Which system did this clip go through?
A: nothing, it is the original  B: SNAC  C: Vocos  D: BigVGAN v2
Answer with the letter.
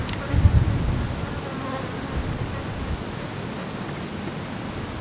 A